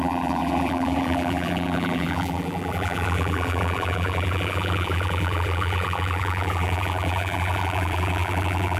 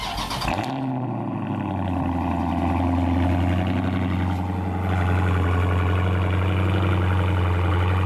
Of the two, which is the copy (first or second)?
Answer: first